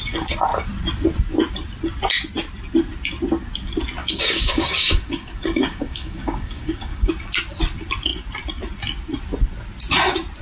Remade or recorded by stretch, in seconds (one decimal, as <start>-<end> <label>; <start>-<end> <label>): 0.0-4.0 recorded; 4.0-7.1 remade; 7.1-10.4 recorded